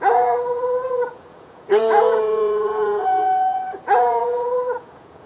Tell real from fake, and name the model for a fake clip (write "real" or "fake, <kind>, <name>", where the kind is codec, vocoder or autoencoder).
fake, vocoder, Vocos